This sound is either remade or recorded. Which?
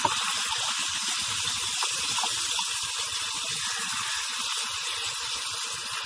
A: recorded